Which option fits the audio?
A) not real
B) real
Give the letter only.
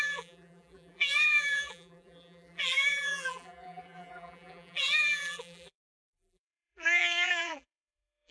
A